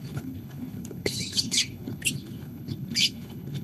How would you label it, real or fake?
fake